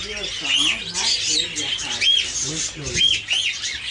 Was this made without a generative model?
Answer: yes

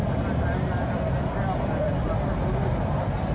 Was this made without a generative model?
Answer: yes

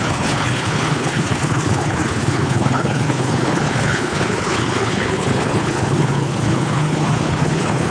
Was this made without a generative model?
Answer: no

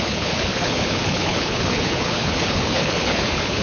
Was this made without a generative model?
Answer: no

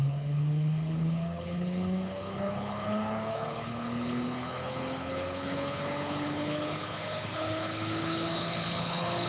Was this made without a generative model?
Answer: no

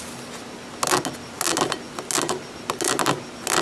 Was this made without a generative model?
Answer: yes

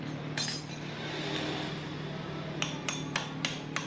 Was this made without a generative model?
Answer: yes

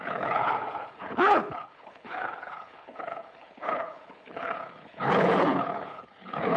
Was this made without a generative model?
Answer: no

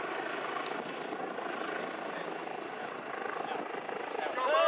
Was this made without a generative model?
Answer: yes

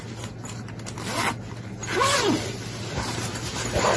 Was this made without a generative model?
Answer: yes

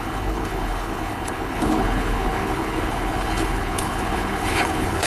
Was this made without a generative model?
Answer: no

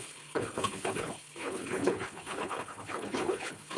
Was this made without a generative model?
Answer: no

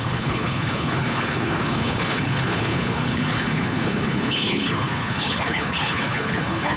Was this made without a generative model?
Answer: no